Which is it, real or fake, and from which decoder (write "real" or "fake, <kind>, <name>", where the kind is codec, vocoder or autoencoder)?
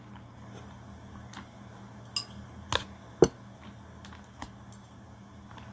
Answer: real